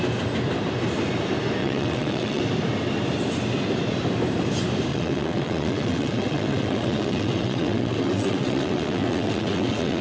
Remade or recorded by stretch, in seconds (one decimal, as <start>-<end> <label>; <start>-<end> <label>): 0.0-1.6 recorded; 1.6-2.4 remade; 2.4-4.9 recorded; 4.9-10.0 remade

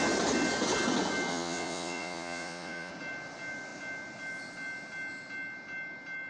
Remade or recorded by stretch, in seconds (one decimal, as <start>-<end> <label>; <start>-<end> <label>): 0.0-1.3 recorded; 1.3-2.9 remade; 2.9-6.3 recorded

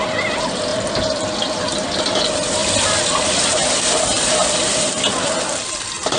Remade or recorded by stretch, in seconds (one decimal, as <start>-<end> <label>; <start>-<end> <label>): 0.0-6.2 recorded